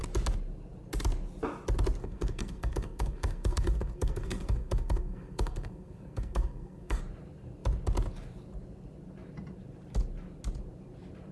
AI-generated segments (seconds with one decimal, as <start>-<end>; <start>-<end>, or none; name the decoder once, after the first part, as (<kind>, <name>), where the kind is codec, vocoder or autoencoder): 2.0-7.0 (codec, SNAC)